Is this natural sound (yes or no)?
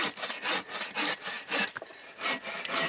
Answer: yes